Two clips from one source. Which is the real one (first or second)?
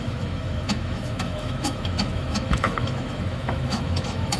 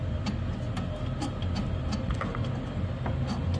second